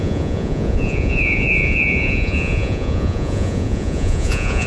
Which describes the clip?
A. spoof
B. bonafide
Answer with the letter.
A